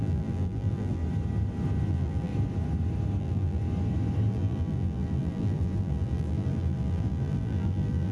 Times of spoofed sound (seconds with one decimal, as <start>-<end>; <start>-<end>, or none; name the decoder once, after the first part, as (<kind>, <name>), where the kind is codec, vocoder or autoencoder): 0.0-1.0 (vocoder, BigVGAN v2); 1.9-2.3; 3.2-3.6; 4.3-8.1